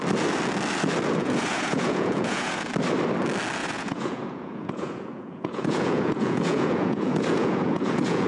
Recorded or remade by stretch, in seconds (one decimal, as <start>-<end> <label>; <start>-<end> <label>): 0.0-1.2 recorded; 1.2-2.7 remade; 2.7-3.6 recorded; 3.6-8.3 remade